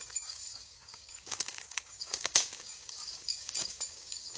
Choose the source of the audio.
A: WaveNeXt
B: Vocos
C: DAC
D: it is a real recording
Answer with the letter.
C